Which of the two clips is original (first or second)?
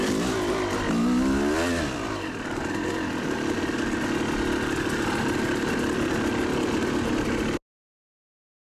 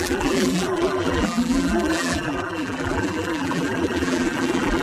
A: first